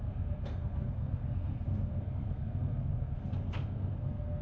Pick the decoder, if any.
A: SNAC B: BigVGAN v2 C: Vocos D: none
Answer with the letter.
A